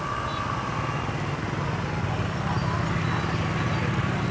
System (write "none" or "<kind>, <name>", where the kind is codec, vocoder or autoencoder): none